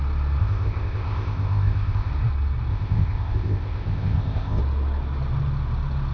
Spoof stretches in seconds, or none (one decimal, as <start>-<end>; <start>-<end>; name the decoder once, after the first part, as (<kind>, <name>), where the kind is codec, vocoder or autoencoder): 0.4-2.1 (codec, ZipCodec); 2.7-4.6